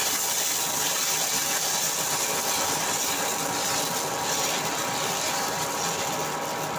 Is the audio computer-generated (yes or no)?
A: no